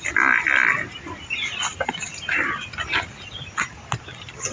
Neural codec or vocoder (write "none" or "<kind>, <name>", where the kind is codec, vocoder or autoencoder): none